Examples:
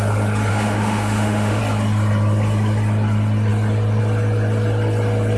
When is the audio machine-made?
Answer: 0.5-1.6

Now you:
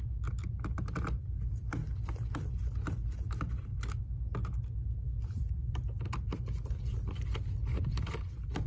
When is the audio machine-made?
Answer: none

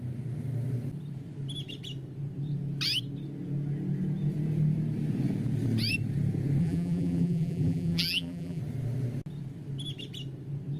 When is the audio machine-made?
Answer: 6.6-8.6